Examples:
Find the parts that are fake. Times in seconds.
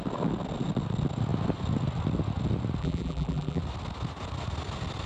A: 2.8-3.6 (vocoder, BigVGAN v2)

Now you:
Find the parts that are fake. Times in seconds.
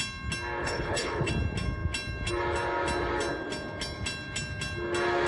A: 0.6-1.3 (codec, HILCodec)